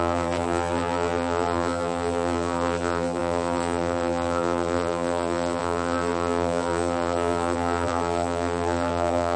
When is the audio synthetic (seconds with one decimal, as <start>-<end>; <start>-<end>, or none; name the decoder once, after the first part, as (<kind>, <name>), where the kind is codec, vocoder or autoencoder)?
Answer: 0.0-9.4 (vocoder, BigVGAN v2)